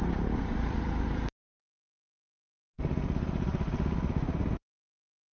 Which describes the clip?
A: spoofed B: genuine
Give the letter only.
A